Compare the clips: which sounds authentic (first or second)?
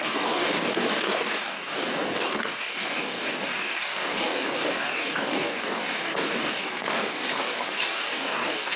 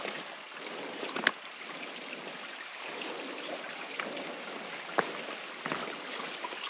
second